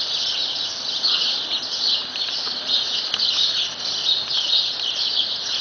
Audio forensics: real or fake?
real